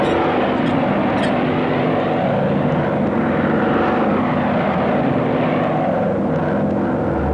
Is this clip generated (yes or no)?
no